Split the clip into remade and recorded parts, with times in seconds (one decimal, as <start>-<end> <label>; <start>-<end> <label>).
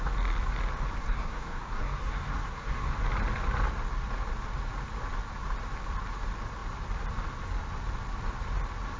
0.0-1.0 recorded; 1.0-2.9 remade; 2.9-9.0 recorded